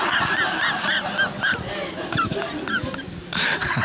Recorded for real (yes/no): yes